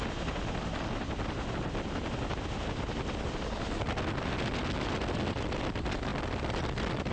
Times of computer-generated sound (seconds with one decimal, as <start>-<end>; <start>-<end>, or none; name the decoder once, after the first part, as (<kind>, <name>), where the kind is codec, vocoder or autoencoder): none